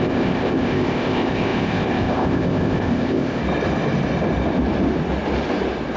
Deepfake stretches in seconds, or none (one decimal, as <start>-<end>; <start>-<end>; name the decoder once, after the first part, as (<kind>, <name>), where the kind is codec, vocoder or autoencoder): 0.0-3.4 (codec, ZipCodec)